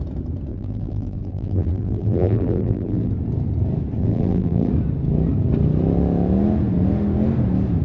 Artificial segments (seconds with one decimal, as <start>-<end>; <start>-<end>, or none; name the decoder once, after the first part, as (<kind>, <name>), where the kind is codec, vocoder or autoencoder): 0.5-3.1 (vocoder, BigVGAN v2); 4.0-4.7

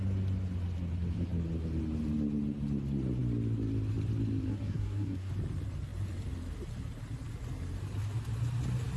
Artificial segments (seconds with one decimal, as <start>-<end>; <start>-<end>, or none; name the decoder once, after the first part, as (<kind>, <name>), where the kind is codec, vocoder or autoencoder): 4.5-5.3 (codec, SNAC)

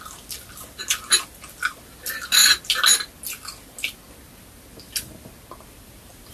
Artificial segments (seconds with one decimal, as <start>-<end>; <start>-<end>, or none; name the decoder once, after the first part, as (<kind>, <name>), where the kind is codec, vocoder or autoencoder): none